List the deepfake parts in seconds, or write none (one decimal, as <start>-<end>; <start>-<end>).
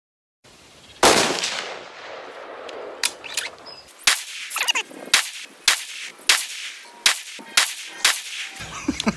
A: none